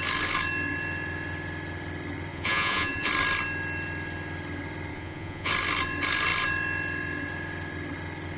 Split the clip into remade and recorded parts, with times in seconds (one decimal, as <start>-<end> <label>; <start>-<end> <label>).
0.0-2.3 recorded; 2.3-3.1 remade; 3.1-4.9 recorded; 4.9-5.5 remade; 5.5-8.4 recorded